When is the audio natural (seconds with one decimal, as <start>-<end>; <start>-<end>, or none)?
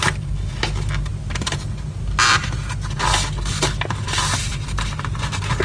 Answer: 0.0-5.6